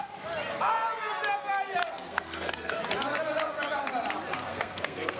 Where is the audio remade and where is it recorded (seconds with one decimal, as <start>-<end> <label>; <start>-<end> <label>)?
0.0-1.8 recorded; 1.8-2.8 remade; 2.8-4.5 recorded; 4.5-5.2 remade